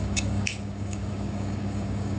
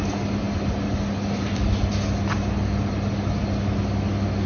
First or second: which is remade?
first